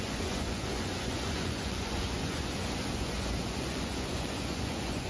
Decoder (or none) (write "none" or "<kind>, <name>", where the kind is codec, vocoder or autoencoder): vocoder, Vocos